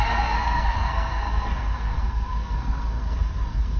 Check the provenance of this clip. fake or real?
fake